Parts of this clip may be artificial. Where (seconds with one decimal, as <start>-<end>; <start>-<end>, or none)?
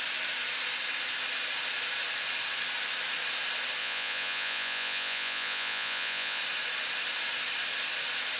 3.8-6.4